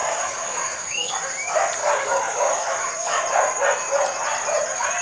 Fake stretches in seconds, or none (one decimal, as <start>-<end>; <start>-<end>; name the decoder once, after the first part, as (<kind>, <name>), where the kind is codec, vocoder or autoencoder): 0.0-1.1 (codec, DAC); 1.8-3.2

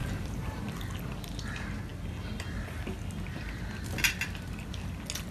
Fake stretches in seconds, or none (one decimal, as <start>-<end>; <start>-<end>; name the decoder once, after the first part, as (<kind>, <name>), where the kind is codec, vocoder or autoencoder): 0.0-0.6 (vocoder, BigVGAN v2)